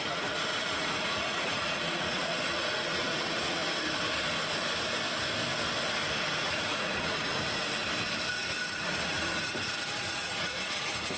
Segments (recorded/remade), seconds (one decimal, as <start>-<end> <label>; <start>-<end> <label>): 0.0-3.6 remade; 3.6-6.3 recorded; 6.3-7.3 remade; 7.3-8.7 recorded; 8.7-11.2 remade